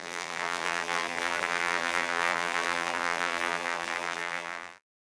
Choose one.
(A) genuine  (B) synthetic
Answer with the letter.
B